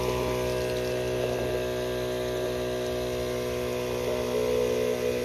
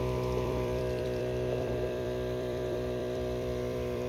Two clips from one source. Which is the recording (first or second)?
first